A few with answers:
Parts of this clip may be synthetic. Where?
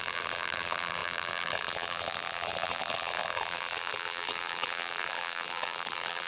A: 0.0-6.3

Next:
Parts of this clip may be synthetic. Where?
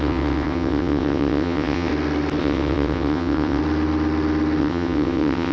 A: 0.0-1.9; 2.4-3.6; 4.6-5.5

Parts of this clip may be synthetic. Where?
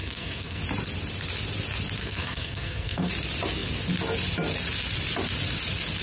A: 0.0-0.6; 2.0-3.1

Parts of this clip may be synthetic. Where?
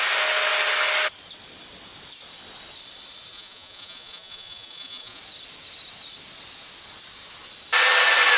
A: 3.3-5.2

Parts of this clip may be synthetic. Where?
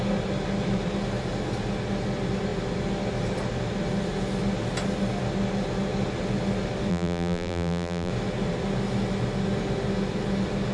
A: 6.9-8.1